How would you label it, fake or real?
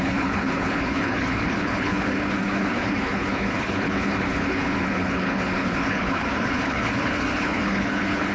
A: fake